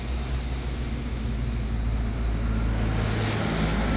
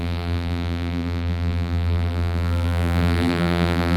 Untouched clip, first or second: first